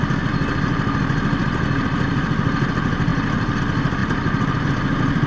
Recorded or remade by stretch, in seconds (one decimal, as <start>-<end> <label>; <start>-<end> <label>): 0.0-3.1 recorded; 3.1-3.6 remade; 3.6-5.3 recorded